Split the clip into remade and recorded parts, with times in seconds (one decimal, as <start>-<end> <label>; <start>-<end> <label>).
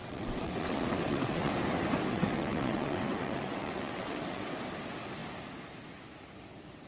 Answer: 0.0-1.5 remade; 1.5-2.1 recorded; 2.1-4.5 remade; 4.5-6.9 recorded